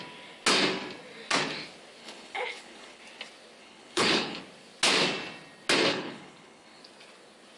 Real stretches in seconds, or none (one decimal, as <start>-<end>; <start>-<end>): 0.0-2.0; 3.0-3.6; 4.4-5.9; 6.8-7.6